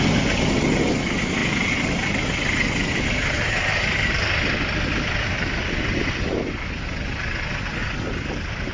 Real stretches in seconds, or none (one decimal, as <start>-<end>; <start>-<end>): 0.0-1.4; 6.3-7.8